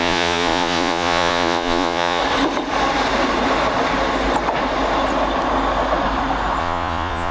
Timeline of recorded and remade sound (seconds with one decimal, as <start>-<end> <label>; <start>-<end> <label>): 0.0-2.2 remade; 2.2-6.6 recorded; 6.6-7.3 remade